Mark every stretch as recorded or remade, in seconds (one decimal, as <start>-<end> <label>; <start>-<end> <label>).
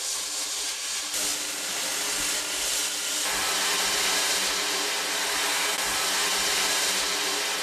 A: 0.0-7.6 recorded